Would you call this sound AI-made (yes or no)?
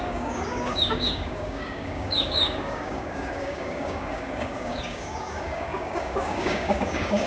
yes